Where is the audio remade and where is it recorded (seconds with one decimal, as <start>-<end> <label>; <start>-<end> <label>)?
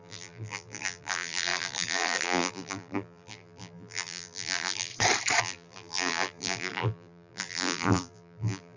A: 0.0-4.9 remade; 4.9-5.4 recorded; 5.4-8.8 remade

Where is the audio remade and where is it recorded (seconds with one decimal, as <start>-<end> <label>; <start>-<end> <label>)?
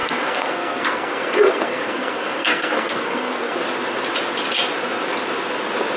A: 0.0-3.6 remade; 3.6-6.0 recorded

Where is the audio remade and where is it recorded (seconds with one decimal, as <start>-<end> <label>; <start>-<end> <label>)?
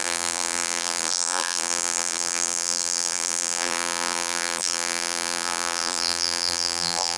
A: 0.0-7.2 remade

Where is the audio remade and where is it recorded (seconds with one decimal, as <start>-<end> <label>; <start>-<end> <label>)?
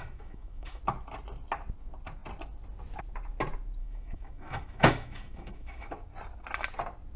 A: 0.0-0.8 remade; 0.8-3.8 recorded; 3.8-5.9 remade; 5.9-7.2 recorded